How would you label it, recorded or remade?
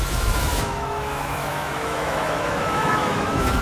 remade